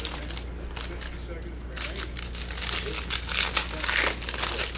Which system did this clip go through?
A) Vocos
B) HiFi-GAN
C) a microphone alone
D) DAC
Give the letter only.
C